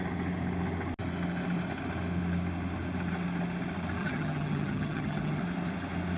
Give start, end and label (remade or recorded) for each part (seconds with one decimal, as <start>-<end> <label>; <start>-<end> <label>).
0.0-4.0 recorded; 4.0-5.4 remade; 5.4-6.2 recorded